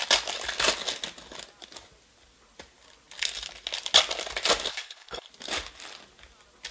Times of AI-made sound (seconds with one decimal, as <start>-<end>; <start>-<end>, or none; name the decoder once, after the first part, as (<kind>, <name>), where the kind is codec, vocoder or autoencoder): 4.7-5.3 (codec, HILCodec)